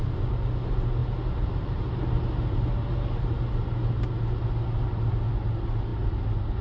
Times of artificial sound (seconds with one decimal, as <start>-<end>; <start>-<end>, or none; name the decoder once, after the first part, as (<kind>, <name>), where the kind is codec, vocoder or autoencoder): none